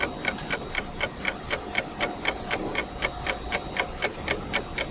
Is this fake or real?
real